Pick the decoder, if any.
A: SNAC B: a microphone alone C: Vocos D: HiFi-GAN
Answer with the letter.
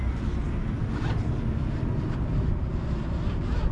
B